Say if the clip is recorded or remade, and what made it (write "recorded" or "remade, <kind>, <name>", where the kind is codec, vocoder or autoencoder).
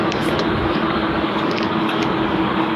remade, codec, DAC